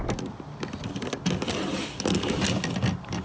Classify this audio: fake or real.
real